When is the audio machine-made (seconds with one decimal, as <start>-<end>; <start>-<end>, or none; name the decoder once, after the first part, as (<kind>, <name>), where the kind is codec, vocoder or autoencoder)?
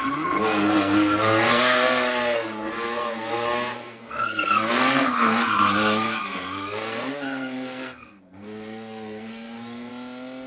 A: 0.0-9.9 (codec, SNAC)